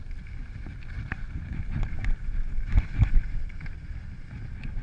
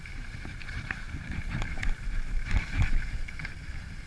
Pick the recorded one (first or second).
first